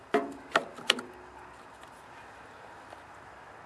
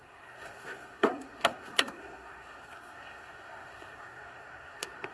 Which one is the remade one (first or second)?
second